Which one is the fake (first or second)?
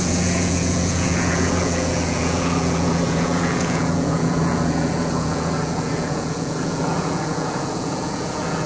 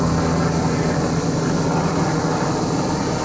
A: first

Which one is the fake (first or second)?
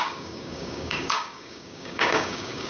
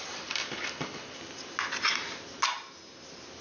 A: first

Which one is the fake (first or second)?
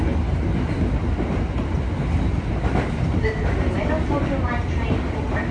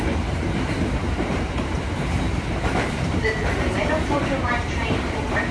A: second